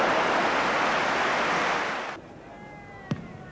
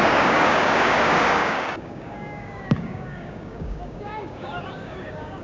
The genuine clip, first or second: first